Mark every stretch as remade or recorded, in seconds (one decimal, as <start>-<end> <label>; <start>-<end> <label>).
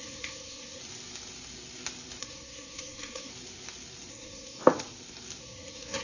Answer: 0.0-0.8 remade; 0.8-2.2 recorded; 2.2-3.3 remade; 3.3-4.1 recorded; 4.1-4.6 remade; 4.6-5.4 recorded; 5.4-6.0 remade